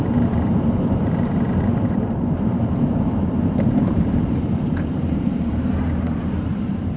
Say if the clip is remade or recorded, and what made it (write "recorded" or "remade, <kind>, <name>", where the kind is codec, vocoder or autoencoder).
remade, vocoder, BigVGAN v2